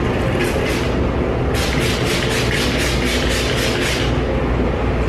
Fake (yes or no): no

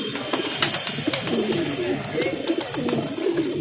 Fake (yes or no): no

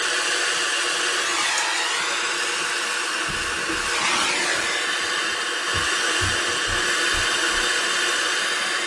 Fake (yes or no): no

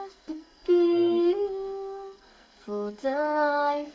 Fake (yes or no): yes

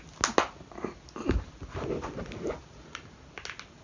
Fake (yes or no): no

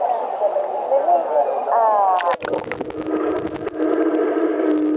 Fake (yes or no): no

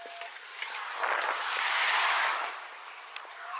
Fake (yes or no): no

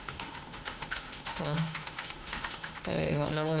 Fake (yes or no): yes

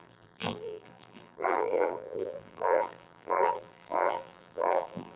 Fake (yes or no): yes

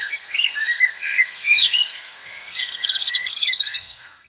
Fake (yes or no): yes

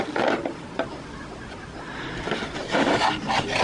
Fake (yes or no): no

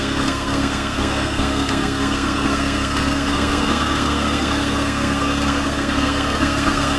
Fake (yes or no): yes